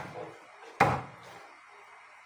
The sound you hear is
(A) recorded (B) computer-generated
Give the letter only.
A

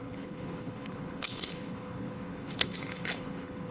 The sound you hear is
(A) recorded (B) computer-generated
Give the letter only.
B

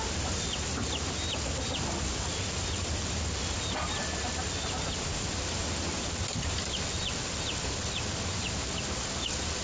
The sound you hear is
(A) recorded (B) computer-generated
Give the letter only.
A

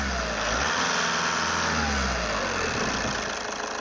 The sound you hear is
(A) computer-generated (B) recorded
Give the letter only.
B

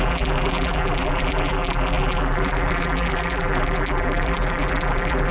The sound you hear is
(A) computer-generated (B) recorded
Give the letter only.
A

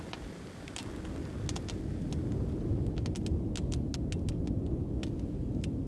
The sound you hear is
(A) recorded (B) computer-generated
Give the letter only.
A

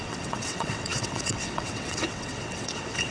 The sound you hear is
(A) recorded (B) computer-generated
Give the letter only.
B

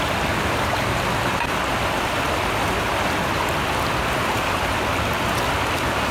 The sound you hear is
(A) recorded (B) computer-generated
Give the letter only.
B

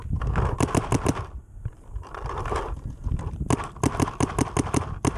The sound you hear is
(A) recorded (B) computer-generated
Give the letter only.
A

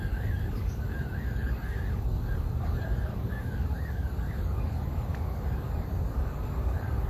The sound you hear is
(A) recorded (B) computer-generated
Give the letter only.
B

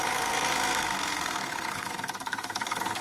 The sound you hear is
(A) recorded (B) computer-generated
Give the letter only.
B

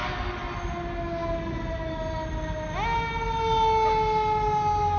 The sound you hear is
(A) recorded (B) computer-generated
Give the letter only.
A